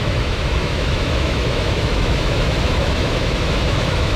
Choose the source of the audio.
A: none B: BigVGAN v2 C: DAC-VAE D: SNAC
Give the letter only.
C